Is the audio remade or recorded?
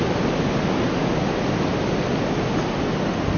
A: recorded